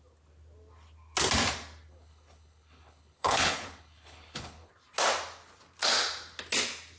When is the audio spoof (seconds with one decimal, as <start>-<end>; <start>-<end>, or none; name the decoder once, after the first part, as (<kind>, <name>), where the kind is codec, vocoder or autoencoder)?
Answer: 1.9-4.7 (codec, HILCodec)